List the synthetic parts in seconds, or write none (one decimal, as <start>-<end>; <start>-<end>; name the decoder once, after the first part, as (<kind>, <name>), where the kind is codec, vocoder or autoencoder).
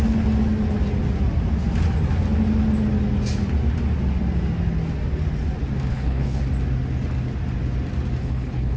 5.9-6.4 (codec, HILCodec); 8.2-8.8